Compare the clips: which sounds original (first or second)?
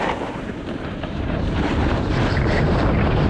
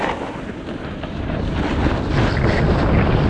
second